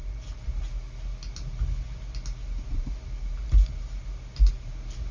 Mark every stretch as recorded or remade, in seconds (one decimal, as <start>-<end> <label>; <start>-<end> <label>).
0.0-5.1 recorded